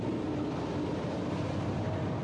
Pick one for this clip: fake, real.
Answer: real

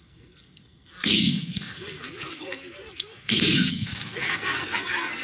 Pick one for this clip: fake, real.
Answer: fake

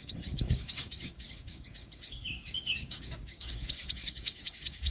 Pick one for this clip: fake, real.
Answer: fake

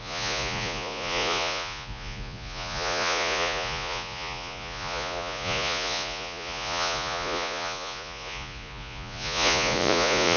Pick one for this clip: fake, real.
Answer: fake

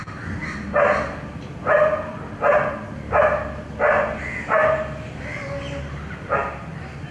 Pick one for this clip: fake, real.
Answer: real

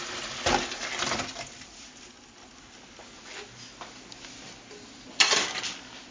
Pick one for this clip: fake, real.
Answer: real